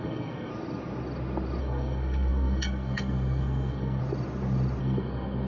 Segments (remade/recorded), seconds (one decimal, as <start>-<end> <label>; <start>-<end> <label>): 0.0-0.5 remade; 0.5-1.6 recorded; 1.6-4.0 remade; 4.0-4.8 recorded; 4.8-5.5 remade

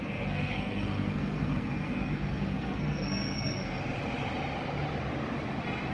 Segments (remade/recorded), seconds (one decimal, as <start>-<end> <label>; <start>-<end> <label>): 0.0-3.8 remade; 3.8-5.9 recorded

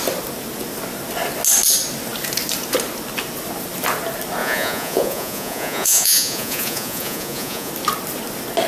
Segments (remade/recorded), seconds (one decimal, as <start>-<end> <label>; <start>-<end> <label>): 0.0-4.4 recorded; 4.4-7.7 remade; 7.7-8.7 recorded

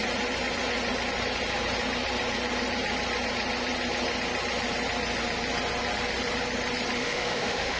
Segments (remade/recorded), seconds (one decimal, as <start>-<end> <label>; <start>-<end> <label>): 0.0-7.0 recorded; 7.0-7.8 remade

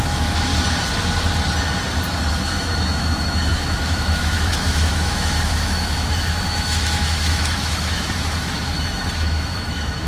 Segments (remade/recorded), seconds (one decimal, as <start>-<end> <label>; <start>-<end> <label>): 0.0-0.5 remade; 0.5-2.3 recorded; 2.3-10.1 remade